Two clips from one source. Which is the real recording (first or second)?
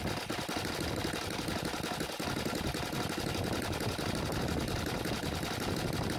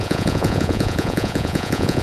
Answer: first